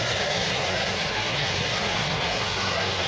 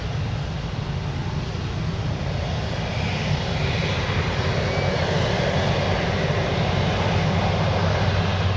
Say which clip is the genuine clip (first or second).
second